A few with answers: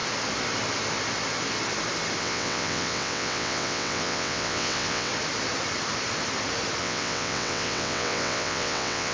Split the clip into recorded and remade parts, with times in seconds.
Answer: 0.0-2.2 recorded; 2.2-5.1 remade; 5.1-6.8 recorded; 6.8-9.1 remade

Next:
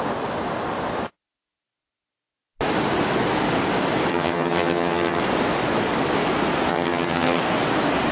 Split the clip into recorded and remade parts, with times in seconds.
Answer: 0.0-4.1 recorded; 4.1-5.2 remade; 5.2-6.7 recorded; 6.7-7.4 remade; 7.4-8.1 recorded

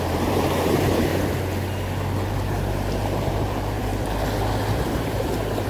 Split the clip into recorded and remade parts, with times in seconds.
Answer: 0.0-1.1 remade; 1.1-2.3 recorded; 2.3-3.9 remade; 3.9-4.9 recorded; 4.9-5.7 remade

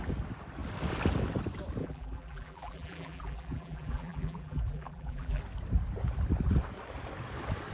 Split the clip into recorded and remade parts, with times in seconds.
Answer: 0.0-1.8 recorded; 1.8-5.4 remade; 5.4-7.7 recorded

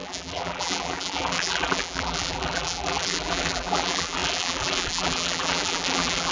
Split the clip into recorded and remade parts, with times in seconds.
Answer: 0.0-6.3 remade

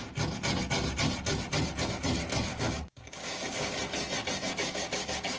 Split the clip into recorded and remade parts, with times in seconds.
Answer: 0.0-2.5 recorded; 2.5-3.8 remade; 3.8-4.6 recorded; 4.6-5.4 remade

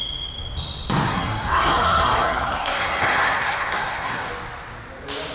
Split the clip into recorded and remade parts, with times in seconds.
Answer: 0.0-1.1 recorded; 1.1-4.3 remade; 4.3-5.3 recorded